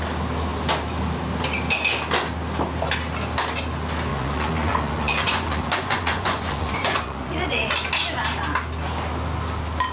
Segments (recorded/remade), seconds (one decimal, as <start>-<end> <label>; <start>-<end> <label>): 0.0-4.1 recorded; 4.1-7.7 remade; 7.7-9.9 recorded